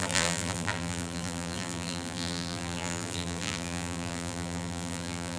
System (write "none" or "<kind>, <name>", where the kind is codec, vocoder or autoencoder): vocoder, BigVGAN v2